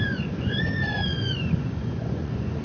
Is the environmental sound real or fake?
fake